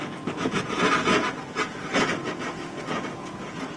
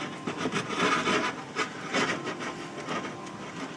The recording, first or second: second